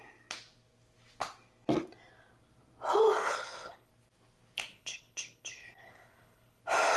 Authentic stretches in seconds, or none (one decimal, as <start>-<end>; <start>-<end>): 0.0-3.2; 3.9-4.7; 6.6-7.0